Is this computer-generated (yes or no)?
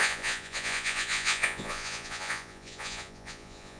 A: yes